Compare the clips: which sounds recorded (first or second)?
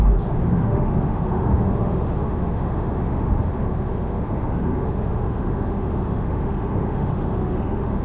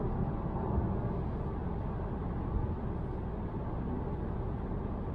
second